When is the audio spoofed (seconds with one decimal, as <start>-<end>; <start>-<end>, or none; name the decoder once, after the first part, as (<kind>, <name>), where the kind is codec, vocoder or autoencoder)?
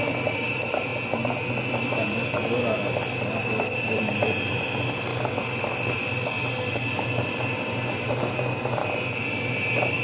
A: 0.0-0.9 (vocoder, BigVGAN v2); 3.4-5.1; 6.4-8.8; 9.5-10.0